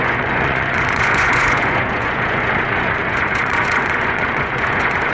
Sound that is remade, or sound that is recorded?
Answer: remade